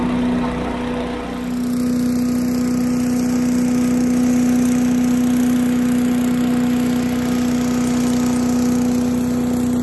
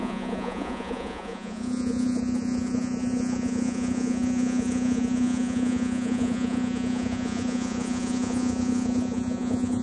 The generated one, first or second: second